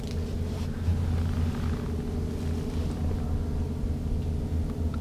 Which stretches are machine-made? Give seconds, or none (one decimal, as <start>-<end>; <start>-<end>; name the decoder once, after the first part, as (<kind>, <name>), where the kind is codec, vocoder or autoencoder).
none